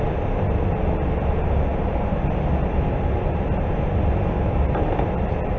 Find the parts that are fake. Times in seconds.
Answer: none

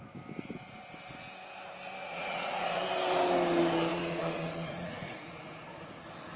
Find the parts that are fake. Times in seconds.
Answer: 2.0-2.8 (vocoder, Vocos); 3.9-6.0

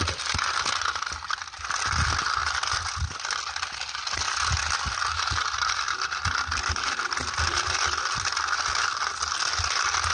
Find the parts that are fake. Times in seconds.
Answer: none